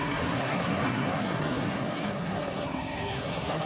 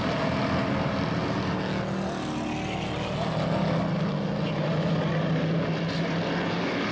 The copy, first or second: first